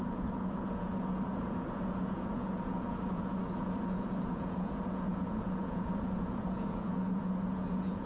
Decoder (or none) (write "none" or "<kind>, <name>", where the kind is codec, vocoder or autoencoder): vocoder, Vocos